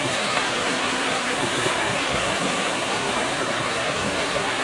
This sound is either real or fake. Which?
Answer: fake